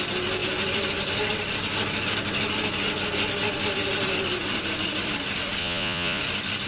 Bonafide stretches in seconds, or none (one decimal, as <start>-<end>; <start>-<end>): 0.0-5.6; 6.2-6.7